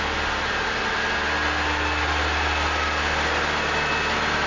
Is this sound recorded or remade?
recorded